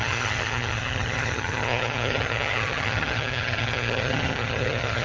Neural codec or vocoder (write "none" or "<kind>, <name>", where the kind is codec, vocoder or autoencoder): vocoder, HiFi-GAN